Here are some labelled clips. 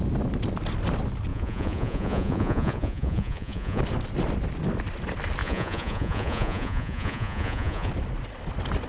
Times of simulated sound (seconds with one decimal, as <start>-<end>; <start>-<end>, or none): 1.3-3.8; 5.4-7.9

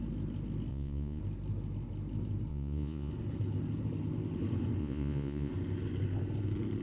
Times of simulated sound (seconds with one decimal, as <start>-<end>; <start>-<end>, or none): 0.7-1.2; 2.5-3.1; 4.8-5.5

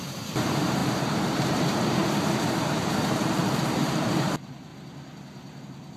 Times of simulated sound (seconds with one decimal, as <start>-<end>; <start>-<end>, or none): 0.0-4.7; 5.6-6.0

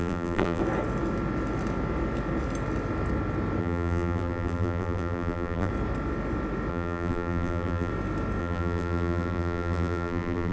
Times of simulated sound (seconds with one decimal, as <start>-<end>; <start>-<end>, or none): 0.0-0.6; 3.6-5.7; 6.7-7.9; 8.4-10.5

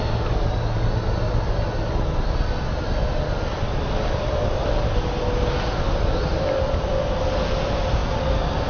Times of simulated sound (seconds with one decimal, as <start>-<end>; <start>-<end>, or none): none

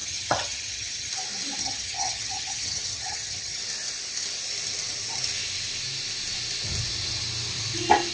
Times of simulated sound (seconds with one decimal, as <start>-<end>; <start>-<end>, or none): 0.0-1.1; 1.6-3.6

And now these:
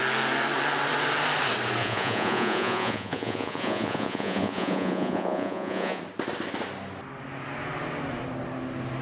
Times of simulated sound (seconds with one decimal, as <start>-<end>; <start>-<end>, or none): 1.8-6.0